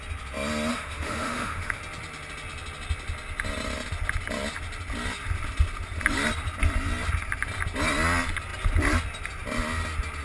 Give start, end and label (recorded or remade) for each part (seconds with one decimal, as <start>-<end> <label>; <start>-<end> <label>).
0.0-0.7 recorded; 0.7-1.8 remade; 1.8-10.2 recorded